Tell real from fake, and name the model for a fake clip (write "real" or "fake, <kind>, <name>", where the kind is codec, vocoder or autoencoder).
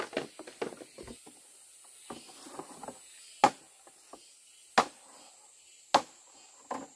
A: real